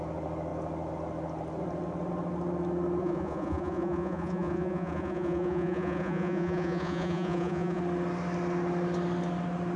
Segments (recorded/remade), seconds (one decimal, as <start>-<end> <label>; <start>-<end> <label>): 0.0-3.0 recorded; 3.0-7.8 remade; 7.8-9.8 recorded